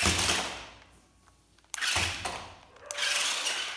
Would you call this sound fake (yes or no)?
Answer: no